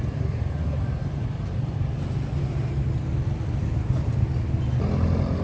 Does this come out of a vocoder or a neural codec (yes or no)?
no